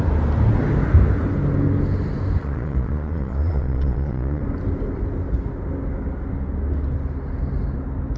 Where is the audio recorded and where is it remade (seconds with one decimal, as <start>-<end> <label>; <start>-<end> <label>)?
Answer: 0.0-2.4 recorded; 2.4-4.4 remade; 4.4-8.2 recorded